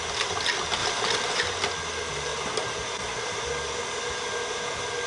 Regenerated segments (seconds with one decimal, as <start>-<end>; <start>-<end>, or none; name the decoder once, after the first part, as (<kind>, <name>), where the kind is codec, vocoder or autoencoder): 0.8-1.4 (vocoder, BigVGAN v2); 2.3-3.5